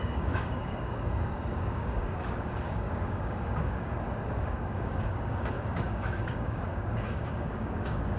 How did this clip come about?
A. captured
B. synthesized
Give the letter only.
B